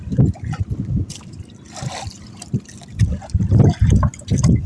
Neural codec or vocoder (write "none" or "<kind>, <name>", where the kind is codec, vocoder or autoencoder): none